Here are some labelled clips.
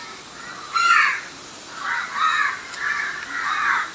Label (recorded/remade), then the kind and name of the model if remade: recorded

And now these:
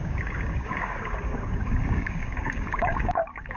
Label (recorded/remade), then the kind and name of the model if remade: remade, codec, DAC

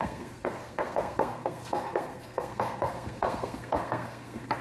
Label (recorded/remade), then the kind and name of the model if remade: remade, codec, SNAC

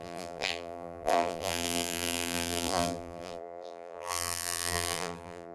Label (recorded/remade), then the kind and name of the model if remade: remade, vocoder, BigVGAN v2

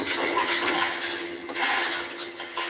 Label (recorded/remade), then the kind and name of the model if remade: remade, vocoder, HiFi-GAN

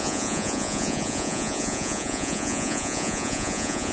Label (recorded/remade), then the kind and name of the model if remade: remade, vocoder, Vocos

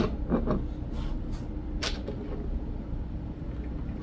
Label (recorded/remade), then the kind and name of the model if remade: recorded